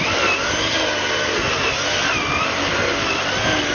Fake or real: real